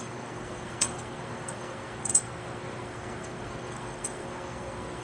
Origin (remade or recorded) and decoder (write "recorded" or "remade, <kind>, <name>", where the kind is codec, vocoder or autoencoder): remade, codec, SNAC